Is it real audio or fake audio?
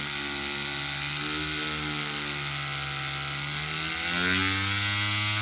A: real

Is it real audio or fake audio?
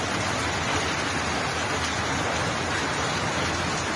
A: real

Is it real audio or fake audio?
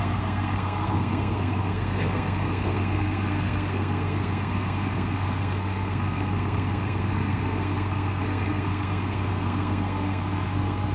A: fake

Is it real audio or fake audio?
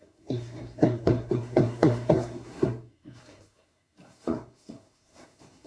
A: fake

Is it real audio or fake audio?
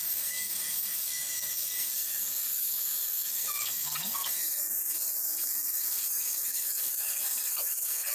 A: fake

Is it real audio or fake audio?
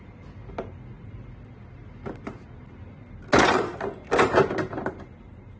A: real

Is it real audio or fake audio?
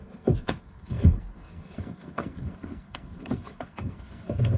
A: fake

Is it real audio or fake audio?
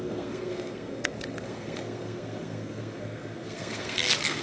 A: fake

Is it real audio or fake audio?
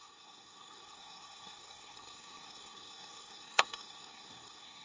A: fake